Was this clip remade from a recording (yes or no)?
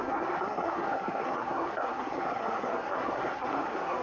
yes